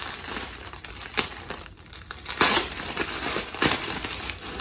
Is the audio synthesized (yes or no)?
yes